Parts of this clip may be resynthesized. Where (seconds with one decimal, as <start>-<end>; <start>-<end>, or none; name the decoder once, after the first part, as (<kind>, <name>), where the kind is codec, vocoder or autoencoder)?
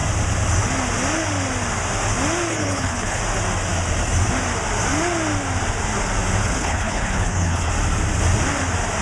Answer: 2.5-3.2 (codec, HILCodec); 6.4-7.7